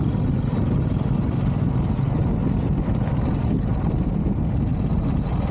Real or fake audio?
real